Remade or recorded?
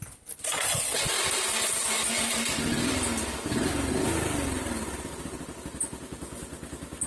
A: recorded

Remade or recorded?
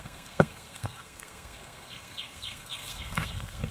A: remade